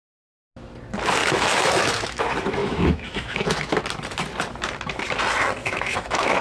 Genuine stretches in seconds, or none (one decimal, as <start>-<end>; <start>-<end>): 0.0-1.2; 2.2-2.6; 3.7-5.6